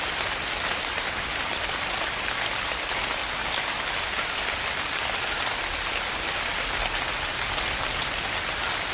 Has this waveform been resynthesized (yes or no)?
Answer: no